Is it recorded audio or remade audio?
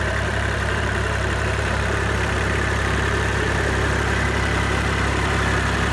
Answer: remade